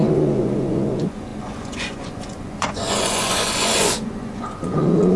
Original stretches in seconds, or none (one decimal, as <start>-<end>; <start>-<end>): none